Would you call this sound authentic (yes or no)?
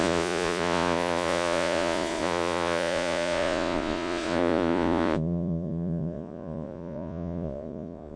no